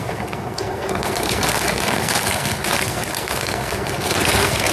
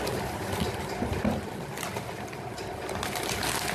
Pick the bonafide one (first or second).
second